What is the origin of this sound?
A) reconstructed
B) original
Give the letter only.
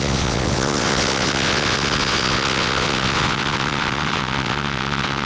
A